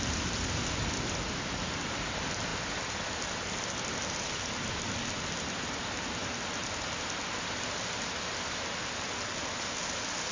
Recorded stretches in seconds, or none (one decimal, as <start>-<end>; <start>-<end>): 0.0-10.3